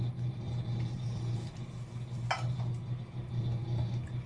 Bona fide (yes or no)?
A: yes